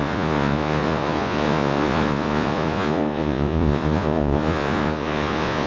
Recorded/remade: remade